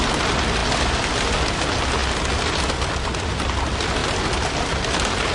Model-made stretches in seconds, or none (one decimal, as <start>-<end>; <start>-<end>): none